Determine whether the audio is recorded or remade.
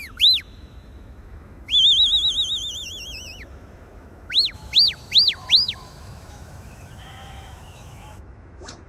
remade